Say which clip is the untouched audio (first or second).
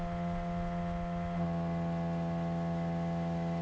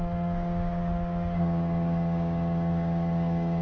first